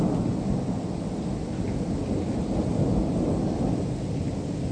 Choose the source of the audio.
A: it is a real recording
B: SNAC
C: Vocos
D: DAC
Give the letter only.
A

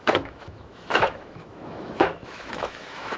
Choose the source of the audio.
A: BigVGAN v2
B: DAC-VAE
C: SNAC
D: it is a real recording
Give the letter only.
B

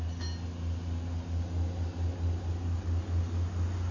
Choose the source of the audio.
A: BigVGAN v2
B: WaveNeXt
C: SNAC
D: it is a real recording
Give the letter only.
D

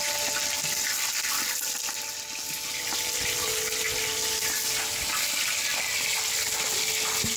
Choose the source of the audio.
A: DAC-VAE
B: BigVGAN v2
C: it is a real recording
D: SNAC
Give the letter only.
C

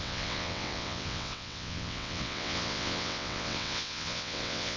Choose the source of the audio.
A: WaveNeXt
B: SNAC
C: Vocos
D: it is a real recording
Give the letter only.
A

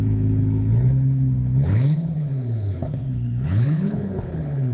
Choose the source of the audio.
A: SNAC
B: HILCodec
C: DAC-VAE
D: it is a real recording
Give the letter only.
B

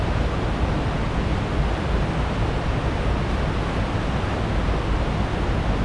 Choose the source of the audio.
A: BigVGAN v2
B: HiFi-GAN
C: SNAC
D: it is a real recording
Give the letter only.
D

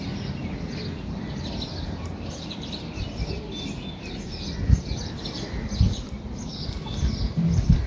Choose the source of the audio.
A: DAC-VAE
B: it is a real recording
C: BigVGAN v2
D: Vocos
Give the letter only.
B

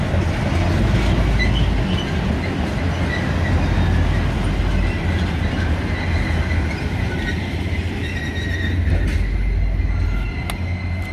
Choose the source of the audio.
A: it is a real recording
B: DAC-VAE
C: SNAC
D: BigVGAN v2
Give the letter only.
A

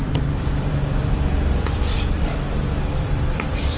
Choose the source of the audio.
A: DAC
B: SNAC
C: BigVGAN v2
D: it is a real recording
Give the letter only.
C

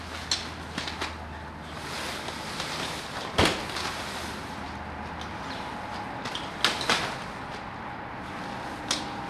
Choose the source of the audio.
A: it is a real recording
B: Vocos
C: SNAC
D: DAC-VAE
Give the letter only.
A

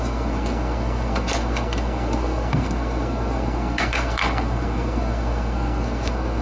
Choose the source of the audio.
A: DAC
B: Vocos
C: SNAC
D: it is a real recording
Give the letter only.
C